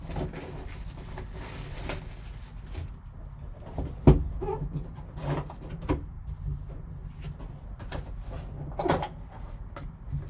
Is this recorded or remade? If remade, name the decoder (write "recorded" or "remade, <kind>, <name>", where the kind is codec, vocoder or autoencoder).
recorded